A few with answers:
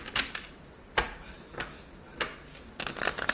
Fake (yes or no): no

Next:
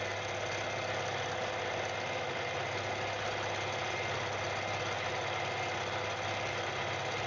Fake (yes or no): no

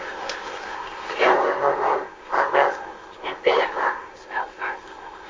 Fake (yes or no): yes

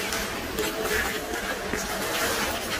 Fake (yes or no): no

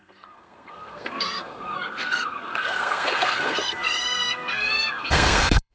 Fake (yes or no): yes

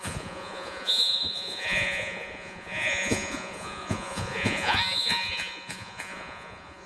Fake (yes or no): yes